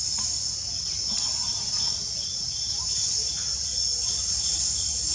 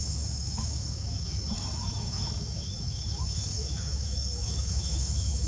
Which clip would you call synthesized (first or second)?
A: second